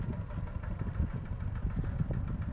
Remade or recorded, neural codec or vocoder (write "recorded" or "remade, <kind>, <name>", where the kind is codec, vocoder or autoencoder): recorded